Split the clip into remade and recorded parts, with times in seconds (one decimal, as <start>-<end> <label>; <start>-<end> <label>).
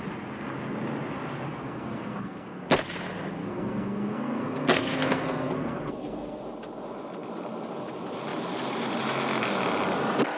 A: 0.0-1.5 recorded; 1.5-2.6 remade; 2.6-3.4 recorded; 3.4-6.4 remade; 6.4-10.4 recorded